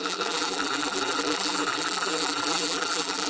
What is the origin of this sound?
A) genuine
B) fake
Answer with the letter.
B